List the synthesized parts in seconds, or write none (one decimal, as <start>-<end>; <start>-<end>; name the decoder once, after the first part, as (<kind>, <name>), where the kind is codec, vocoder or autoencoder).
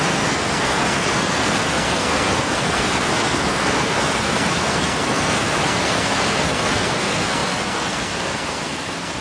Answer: 0.0-9.2 (codec, SNAC)